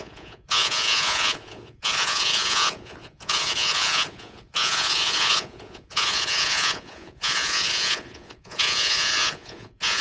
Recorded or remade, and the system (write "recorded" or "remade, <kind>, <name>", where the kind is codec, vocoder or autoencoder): remade, vocoder, Vocos